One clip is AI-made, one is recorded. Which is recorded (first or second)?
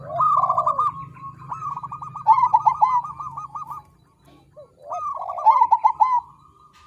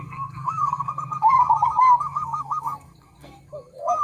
first